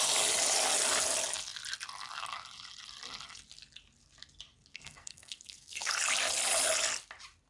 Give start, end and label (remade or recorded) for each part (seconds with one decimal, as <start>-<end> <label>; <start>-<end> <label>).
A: 0.0-4.7 recorded; 4.7-5.9 remade; 5.9-7.5 recorded